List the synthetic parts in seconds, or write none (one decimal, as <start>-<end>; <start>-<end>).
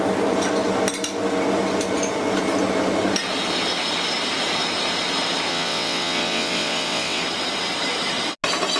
5.5-7.2